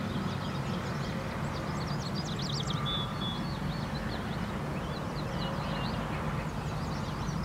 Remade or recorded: recorded